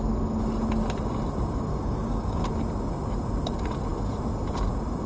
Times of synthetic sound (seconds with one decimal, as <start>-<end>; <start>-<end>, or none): 1.7-2.5